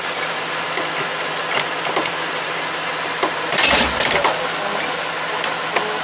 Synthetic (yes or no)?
no